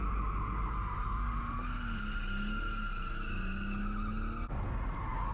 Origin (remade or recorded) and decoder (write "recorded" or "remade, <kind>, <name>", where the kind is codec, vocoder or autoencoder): recorded